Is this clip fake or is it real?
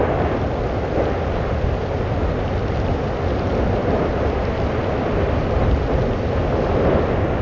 real